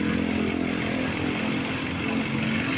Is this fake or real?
real